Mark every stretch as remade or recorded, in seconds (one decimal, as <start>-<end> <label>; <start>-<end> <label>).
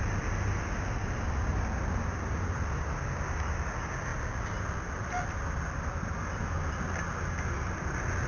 0.0-8.3 recorded